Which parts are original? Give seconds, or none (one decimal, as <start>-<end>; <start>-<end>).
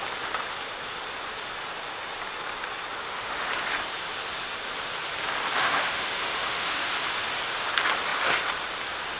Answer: 0.0-3.0; 3.5-5.6; 6.9-9.2